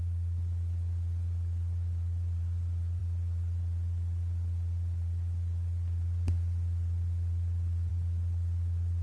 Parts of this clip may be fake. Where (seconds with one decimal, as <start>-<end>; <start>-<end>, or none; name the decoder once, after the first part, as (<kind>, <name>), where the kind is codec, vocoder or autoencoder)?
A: none